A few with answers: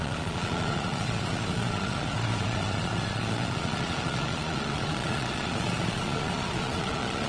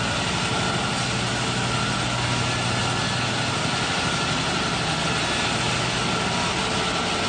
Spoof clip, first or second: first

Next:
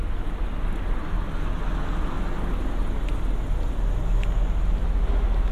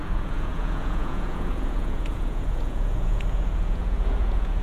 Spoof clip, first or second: second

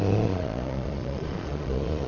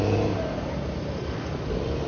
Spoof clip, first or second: first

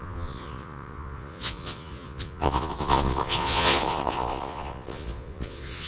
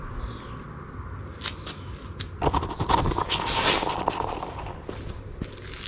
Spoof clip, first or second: first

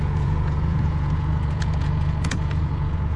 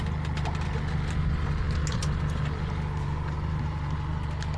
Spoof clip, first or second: first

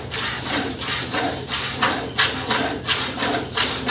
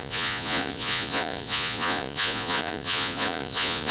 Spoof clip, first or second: second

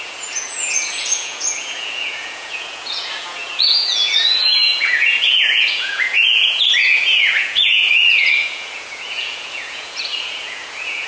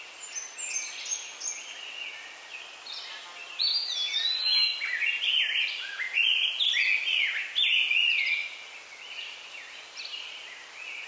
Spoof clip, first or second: first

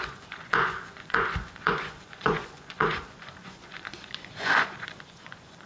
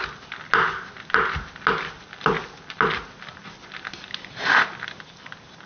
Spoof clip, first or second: first